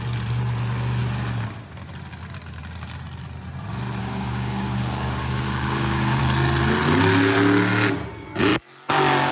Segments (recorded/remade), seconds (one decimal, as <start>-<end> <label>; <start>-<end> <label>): 0.0-4.0 recorded; 4.0-6.2 remade; 6.2-9.3 recorded